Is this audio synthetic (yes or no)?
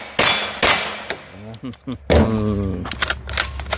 no